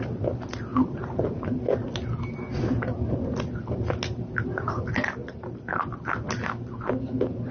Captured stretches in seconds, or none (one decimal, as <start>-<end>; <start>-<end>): 0.0-5.2; 6.2-7.5